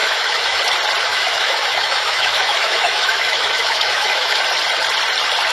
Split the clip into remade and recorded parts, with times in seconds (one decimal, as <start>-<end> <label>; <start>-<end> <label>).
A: 0.0-0.6 remade; 0.6-1.1 recorded; 1.1-4.4 remade; 4.4-5.5 recorded